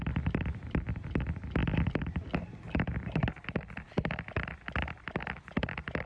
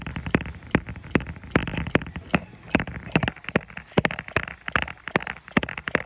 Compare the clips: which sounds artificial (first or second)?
first